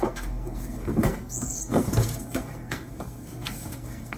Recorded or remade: remade